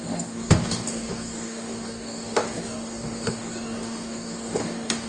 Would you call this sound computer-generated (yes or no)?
yes